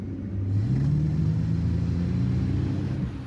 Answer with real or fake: real